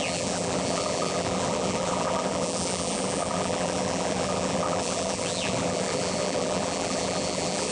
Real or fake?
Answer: fake